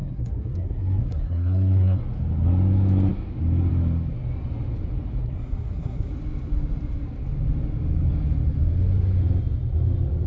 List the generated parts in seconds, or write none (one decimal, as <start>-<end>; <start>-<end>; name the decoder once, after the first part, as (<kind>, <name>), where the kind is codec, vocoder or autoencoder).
0.0-2.0 (codec, SNAC); 5.2-6.1